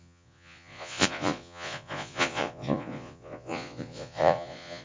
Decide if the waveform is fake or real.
fake